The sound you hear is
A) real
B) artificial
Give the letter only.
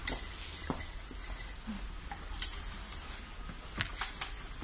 A